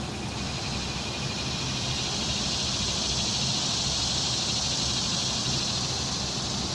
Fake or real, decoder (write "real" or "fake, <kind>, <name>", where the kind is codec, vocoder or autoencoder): real